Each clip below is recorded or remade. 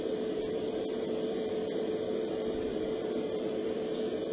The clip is remade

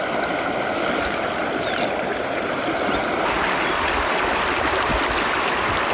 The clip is recorded